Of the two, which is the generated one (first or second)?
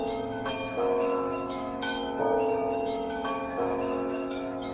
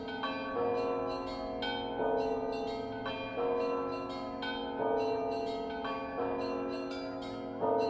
first